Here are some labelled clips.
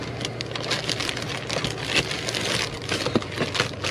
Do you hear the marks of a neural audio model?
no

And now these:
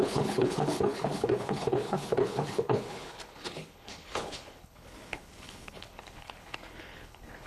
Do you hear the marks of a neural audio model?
yes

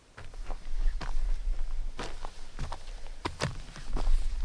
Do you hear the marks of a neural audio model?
no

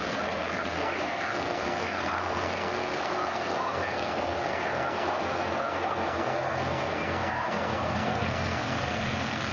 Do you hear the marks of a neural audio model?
yes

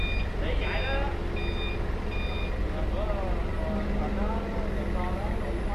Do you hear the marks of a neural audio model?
no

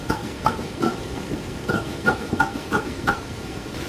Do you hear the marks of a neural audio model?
yes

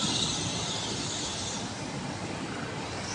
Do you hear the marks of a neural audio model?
no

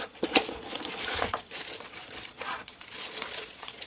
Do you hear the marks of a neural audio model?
yes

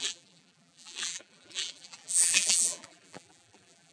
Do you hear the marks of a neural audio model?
yes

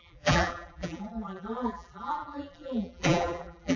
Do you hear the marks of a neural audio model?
yes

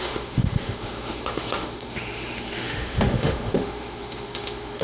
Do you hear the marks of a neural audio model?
yes